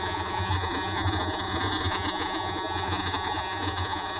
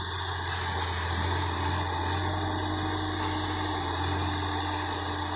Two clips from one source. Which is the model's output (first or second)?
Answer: first